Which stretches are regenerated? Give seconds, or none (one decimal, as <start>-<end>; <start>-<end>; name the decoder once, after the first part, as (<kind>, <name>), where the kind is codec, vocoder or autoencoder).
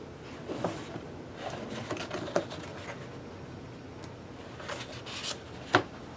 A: none